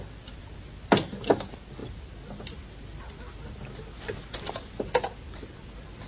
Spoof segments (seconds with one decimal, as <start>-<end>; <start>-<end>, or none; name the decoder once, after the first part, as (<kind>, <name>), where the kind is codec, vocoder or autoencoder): none